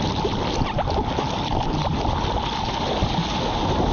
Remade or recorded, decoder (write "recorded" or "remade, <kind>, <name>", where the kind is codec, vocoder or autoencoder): recorded